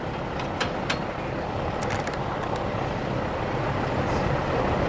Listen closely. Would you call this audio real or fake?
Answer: fake